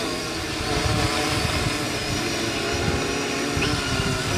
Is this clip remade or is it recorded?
recorded